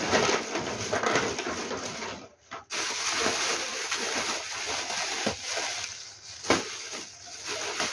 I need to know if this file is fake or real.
real